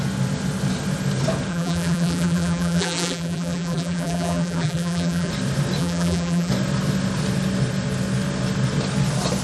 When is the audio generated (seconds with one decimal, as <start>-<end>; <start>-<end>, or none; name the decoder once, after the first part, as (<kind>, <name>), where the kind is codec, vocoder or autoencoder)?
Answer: 1.5-5.3 (vocoder, BigVGAN v2); 5.8-6.5